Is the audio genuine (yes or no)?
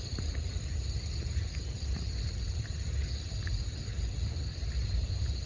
yes